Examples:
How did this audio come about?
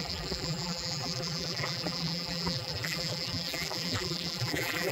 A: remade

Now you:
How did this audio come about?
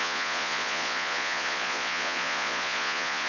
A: remade